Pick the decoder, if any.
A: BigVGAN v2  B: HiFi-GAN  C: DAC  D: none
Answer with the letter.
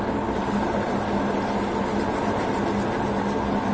D